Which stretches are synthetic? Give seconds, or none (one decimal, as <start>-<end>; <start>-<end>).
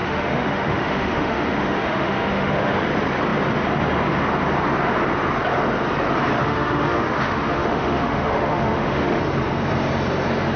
0.0-2.7; 6.3-9.2